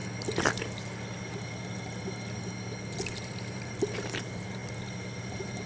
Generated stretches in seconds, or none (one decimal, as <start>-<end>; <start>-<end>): 3.0-5.7

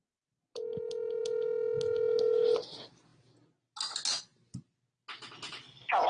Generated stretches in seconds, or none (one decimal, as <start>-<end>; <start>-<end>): none

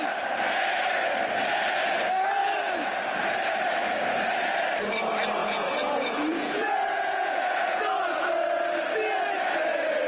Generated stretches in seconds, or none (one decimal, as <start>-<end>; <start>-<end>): 5.4-7.8

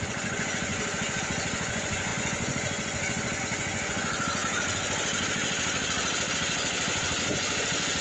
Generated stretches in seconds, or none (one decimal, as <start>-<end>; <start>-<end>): 0.0-4.4; 6.3-8.0

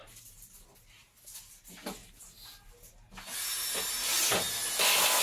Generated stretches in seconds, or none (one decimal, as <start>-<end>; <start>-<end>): none

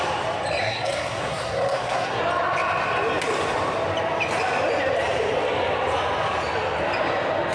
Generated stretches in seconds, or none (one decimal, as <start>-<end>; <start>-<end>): 0.6-2.2

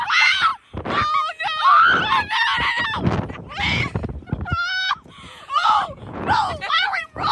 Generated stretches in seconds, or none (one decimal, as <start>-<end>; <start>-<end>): 0.0-0.5; 4.9-7.3